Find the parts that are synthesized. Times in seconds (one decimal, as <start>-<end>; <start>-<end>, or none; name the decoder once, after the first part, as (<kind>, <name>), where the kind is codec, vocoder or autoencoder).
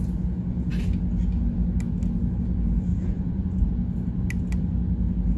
2.9-3.7 (vocoder, Vocos)